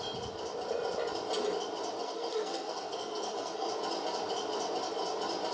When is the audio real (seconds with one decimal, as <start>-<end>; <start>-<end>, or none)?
0.0-2.0; 3.7-5.5